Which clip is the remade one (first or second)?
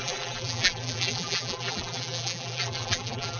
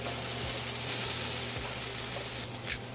first